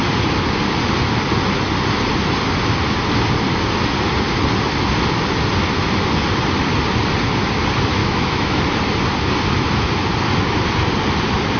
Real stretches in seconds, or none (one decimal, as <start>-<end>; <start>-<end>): 0.0-8.0; 8.6-11.6